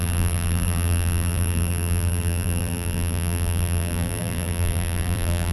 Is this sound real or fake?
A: fake